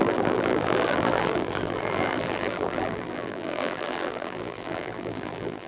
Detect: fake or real fake